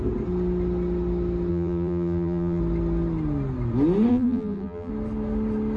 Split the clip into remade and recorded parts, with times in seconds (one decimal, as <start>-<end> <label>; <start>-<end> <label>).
0.0-1.5 recorded; 1.5-2.6 remade; 2.6-4.1 recorded; 4.1-4.9 remade; 4.9-5.8 recorded